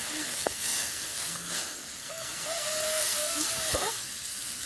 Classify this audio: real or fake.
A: fake